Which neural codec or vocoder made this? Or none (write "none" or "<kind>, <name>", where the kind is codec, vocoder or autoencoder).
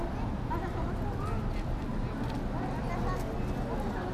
none